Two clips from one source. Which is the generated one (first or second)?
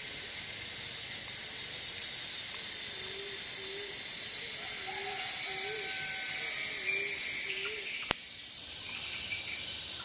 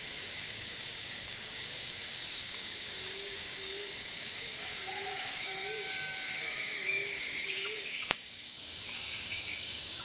second